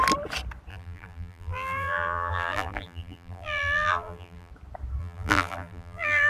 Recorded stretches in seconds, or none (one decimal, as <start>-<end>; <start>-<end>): 0.0-0.7; 4.5-5.0